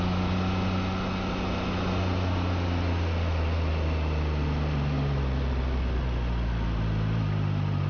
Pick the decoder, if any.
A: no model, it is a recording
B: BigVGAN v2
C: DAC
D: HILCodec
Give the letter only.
A